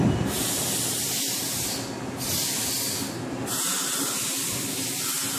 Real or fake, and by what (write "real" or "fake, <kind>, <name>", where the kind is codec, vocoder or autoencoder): real